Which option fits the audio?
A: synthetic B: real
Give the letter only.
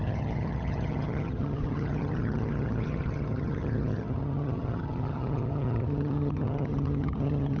A